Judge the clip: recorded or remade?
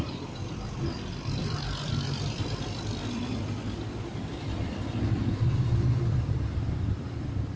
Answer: remade